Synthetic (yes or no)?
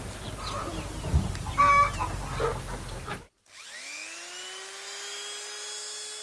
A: no